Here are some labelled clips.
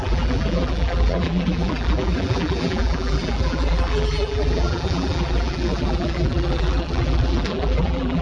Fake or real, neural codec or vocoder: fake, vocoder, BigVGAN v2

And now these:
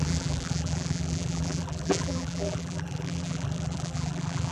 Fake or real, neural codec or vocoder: fake, vocoder, BigVGAN v2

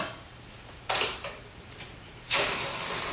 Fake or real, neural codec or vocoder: fake, vocoder, BigVGAN v2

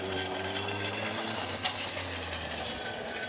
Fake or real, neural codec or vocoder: real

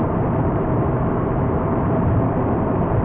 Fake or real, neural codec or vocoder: fake, vocoder, BigVGAN v2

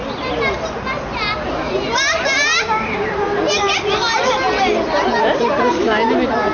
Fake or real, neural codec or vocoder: real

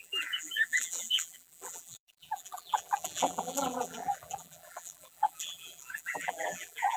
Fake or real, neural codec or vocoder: fake, vocoder, BigVGAN v2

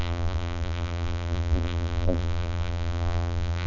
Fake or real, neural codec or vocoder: fake, vocoder, BigVGAN v2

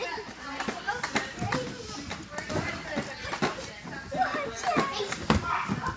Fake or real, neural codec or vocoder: real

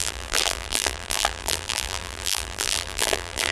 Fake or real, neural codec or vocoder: fake, vocoder, BigVGAN v2